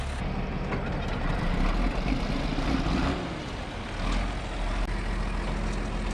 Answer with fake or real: real